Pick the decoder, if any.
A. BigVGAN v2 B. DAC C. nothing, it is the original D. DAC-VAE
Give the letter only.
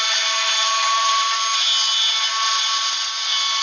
C